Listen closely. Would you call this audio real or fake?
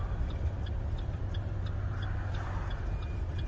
real